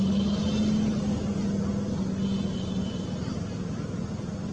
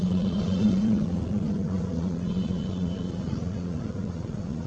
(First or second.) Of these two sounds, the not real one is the second